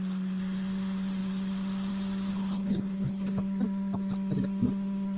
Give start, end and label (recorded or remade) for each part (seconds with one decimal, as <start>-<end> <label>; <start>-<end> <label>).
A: 0.0-2.3 recorded; 2.3-3.4 remade; 3.4-5.2 recorded